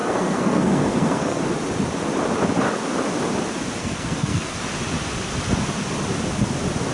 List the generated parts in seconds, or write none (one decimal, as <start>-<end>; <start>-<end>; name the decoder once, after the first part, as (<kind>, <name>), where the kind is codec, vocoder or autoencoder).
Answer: 0.0-1.4 (codec, SNAC); 3.8-4.6